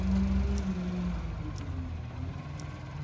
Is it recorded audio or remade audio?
recorded